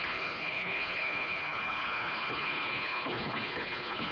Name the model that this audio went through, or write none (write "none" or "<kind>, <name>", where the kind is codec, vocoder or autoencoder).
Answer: codec, HILCodec